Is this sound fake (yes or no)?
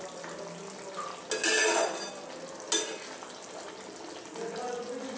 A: no